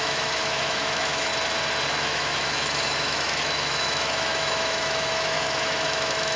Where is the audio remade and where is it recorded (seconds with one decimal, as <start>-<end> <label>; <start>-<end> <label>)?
0.0-1.3 remade; 1.3-1.9 recorded; 1.9-6.4 remade